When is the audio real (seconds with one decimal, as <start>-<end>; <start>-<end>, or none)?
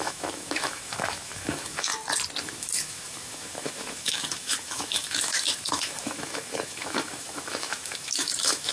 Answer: 1.9-2.4